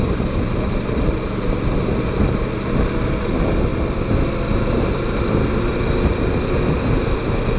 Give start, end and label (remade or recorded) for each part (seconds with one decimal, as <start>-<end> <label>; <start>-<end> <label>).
0.0-7.6 recorded